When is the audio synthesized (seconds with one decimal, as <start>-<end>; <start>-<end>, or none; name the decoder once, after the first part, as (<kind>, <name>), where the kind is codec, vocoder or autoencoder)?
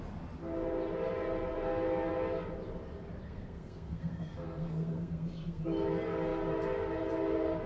3.2-5.6 (codec, SNAC)